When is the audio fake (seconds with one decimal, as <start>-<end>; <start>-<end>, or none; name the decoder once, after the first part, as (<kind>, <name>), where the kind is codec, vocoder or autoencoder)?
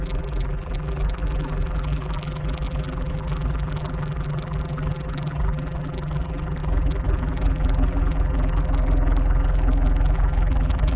0.0-11.0 (vocoder, BigVGAN v2)